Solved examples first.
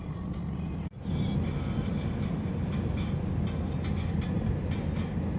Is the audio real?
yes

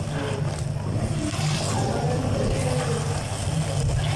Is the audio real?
yes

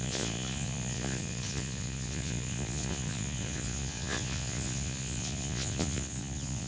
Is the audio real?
no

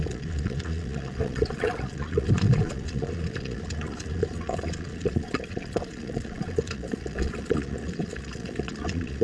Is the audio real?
no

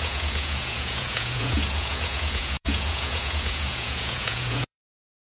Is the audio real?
no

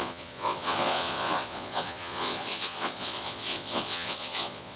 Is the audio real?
no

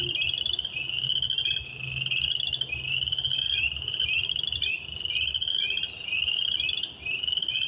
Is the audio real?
yes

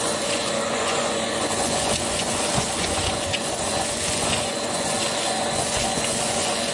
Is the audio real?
no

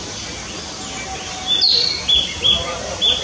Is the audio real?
yes